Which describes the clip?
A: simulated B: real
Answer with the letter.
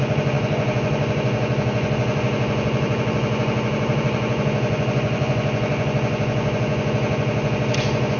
A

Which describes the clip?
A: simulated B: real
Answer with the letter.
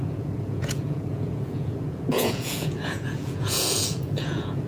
A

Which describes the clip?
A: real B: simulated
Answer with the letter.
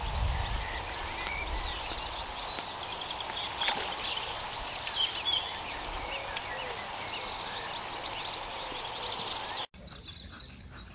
A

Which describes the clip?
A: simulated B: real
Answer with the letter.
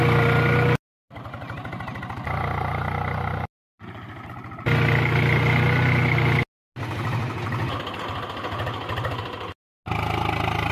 B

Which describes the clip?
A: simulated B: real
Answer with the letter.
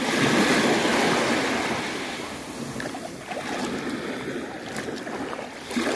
B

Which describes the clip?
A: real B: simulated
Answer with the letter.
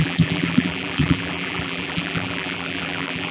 B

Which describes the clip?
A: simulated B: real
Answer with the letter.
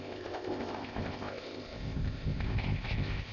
A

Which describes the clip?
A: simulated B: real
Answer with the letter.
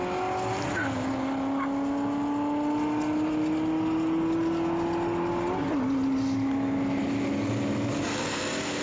B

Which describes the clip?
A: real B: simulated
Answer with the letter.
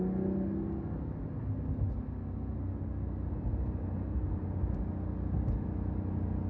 A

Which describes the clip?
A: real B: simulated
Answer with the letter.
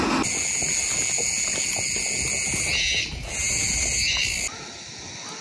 A